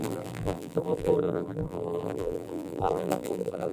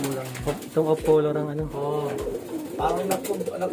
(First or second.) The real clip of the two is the second